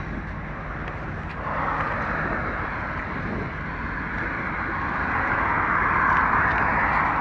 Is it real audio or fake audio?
real